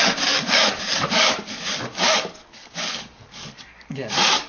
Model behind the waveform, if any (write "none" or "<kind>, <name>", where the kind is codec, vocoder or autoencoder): codec, DAC